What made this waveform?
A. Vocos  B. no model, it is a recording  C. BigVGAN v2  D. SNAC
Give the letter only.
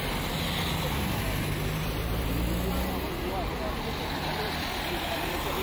B